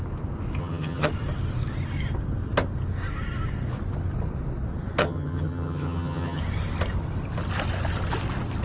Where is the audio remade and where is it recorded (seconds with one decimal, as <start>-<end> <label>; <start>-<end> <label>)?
0.0-0.6 recorded; 0.6-1.1 remade; 1.1-5.0 recorded; 5.0-6.4 remade; 6.4-8.6 recorded